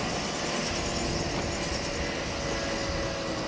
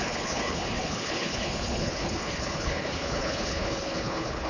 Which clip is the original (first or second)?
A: first